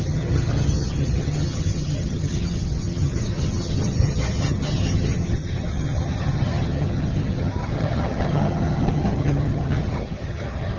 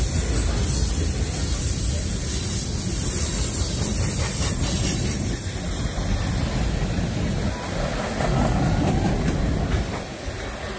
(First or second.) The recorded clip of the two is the second